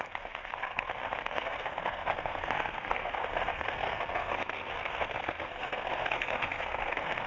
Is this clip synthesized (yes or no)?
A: yes